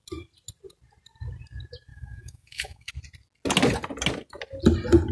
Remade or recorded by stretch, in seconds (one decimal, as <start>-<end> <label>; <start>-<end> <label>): 0.0-1.9 recorded; 1.9-2.9 remade; 2.9-5.1 recorded